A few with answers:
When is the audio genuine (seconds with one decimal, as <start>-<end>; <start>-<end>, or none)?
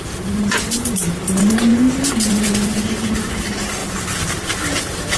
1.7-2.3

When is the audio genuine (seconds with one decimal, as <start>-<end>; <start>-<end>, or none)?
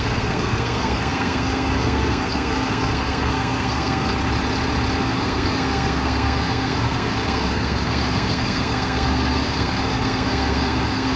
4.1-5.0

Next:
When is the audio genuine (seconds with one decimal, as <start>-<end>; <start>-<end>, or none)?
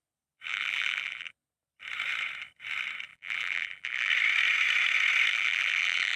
0.0-0.5; 1.3-3.1; 4.1-5.3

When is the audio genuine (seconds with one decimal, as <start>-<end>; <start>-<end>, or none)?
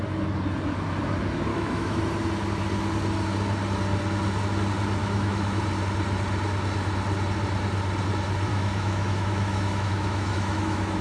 0.0-1.5; 2.0-5.0; 5.6-8.5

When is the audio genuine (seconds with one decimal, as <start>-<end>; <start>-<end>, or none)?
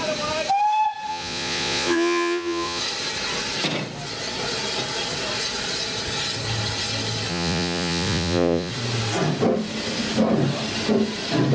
0.0-1.1; 2.8-7.3; 8.7-11.5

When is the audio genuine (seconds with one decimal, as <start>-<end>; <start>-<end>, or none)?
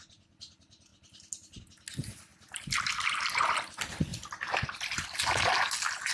0.0-2.3; 3.4-6.1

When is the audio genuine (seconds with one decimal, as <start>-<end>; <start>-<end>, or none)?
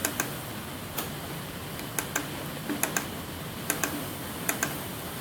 0.0-5.2